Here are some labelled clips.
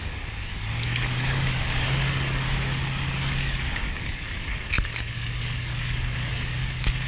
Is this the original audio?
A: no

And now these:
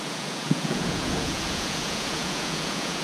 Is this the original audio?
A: no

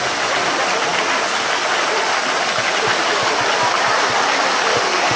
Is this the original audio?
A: yes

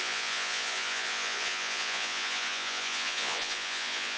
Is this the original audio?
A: no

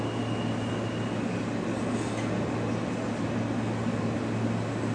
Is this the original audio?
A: yes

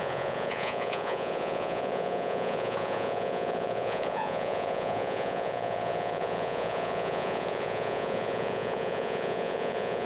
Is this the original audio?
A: no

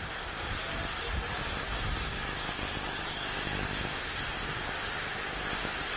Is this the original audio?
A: yes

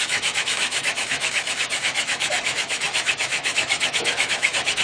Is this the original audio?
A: no